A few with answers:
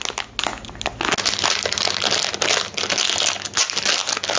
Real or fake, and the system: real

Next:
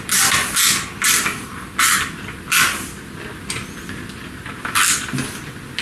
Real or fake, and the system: real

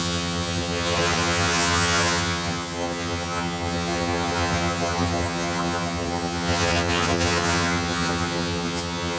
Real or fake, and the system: fake, vocoder, HiFi-GAN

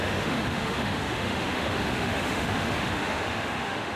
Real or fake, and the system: fake, autoencoder, DAC-VAE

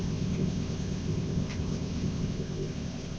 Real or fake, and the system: fake, codec, ZipCodec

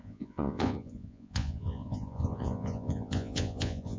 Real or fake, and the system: fake, vocoder, Vocos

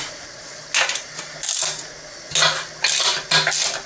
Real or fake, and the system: real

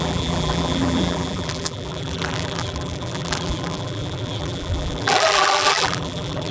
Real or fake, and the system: fake, vocoder, BigVGAN v2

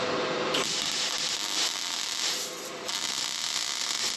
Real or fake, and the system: fake, vocoder, BigVGAN v2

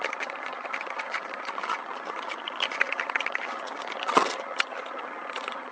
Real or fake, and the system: fake, vocoder, HiFi-GAN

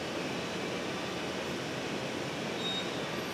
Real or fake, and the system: real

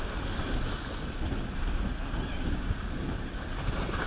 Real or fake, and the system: real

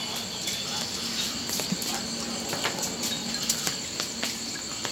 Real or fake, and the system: real